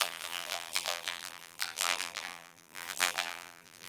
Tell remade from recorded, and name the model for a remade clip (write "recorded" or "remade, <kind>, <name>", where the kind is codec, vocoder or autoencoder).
remade, vocoder, BigVGAN v2